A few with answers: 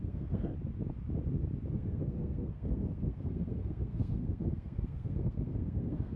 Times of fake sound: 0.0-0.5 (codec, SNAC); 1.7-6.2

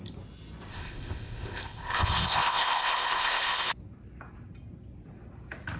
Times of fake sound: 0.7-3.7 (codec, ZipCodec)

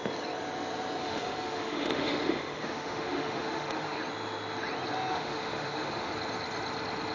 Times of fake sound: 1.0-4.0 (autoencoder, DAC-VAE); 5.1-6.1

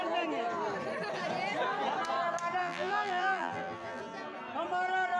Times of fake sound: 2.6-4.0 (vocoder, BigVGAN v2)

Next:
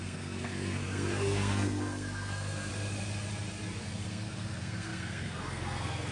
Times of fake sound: 0.0-2.7 (codec, SNAC); 3.8-6.1